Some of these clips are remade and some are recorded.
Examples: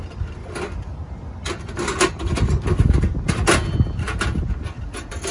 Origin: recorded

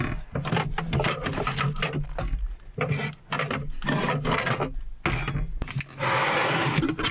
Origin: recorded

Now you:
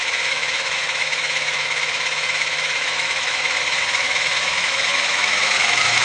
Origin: remade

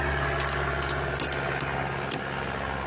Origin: recorded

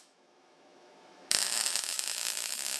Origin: remade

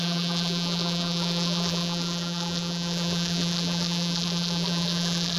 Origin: remade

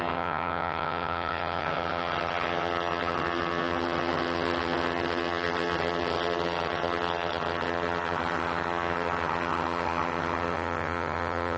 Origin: remade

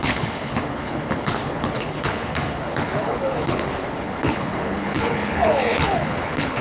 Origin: remade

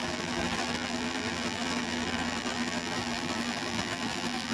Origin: remade